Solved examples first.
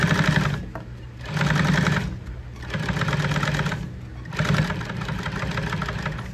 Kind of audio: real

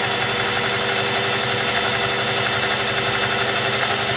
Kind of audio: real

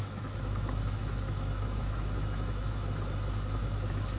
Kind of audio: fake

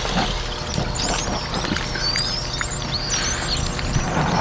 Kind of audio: real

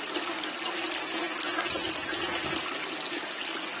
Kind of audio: real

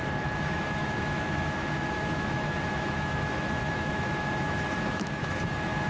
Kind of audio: fake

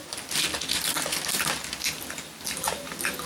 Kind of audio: real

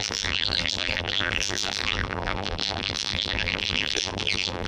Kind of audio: fake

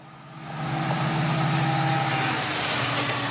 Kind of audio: real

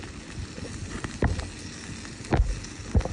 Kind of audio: real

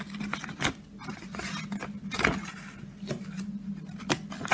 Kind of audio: real